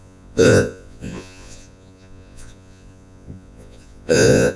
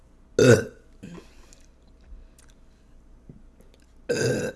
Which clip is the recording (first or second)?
second